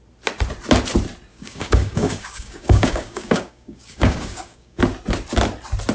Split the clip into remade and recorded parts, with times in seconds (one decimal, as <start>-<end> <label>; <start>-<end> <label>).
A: 0.0-1.3 recorded; 1.3-4.8 remade; 4.8-5.9 recorded